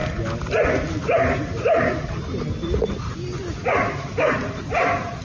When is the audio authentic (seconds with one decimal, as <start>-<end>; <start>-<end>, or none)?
0.0-5.2